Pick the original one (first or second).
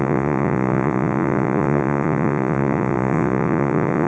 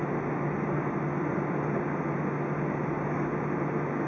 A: second